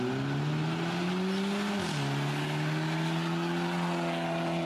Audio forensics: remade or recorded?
recorded